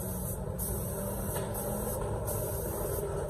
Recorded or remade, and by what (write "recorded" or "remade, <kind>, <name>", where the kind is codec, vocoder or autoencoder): recorded